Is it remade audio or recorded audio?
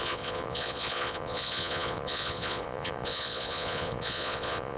remade